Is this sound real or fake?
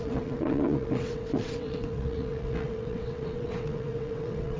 fake